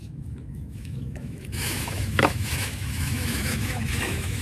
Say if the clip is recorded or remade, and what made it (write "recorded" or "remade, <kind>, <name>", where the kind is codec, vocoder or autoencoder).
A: remade, autoencoder, DAC-VAE